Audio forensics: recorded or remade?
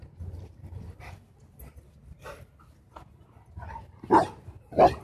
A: recorded